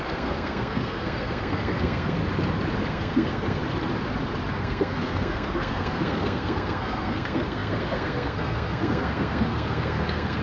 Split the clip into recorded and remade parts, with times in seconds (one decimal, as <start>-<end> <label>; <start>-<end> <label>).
0.0-2.2 remade; 2.2-2.9 recorded; 2.9-3.6 remade; 3.6-4.5 recorded; 4.5-10.4 remade

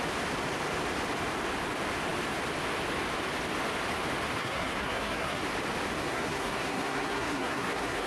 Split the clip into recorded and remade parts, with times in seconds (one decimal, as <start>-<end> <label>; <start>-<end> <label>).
0.0-4.4 recorded; 4.4-5.4 remade; 5.4-6.0 recorded; 6.0-8.1 remade

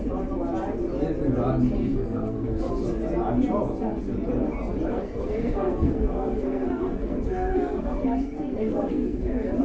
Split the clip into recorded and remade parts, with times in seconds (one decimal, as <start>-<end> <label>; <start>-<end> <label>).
0.0-1.8 recorded; 1.8-2.7 remade; 2.7-4.9 recorded; 4.9-9.6 remade